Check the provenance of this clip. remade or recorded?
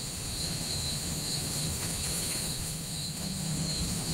remade